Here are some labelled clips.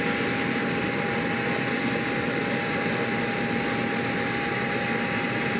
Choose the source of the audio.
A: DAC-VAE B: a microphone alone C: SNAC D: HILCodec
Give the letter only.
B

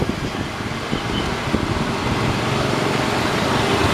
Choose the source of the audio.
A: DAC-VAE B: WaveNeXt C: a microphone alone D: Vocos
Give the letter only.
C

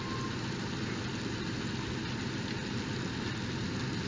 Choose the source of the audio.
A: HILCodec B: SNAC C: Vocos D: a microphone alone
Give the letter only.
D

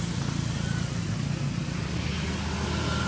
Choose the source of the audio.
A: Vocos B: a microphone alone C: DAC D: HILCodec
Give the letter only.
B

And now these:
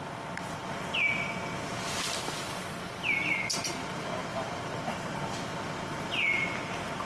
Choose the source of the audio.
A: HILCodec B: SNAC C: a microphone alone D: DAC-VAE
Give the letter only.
C